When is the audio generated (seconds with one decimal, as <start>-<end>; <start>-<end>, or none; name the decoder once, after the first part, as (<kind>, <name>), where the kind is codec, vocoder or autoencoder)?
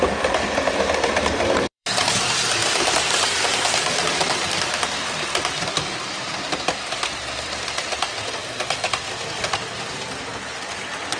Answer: 0.0-10.3 (vocoder, BigVGAN v2)